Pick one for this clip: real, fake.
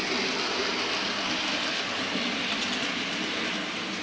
real